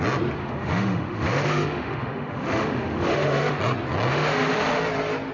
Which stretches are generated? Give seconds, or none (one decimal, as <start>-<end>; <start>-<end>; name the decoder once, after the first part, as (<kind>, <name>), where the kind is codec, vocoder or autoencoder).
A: 0.4-3.6 (autoencoder, DAC-VAE); 4.1-4.8